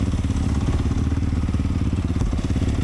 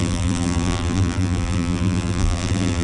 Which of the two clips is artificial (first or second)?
second